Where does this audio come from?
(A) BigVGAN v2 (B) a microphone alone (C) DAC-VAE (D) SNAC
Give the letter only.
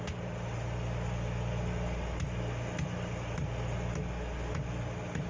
B